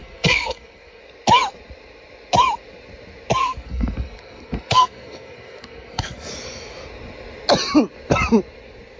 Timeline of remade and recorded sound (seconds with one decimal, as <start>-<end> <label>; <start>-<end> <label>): 0.0-1.0 remade; 1.0-3.4 recorded; 3.4-6.3 remade; 6.3-9.0 recorded